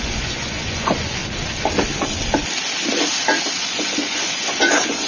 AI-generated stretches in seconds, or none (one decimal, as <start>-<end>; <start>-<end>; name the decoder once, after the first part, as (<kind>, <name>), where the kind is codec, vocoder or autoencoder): 0.0-1.2 (vocoder, Vocos); 3.6-5.1